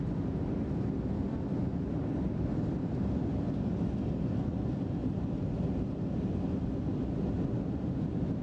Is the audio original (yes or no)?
yes